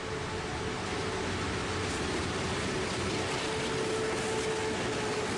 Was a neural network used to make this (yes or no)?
no